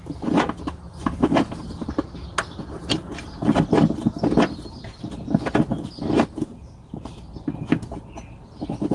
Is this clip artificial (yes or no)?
no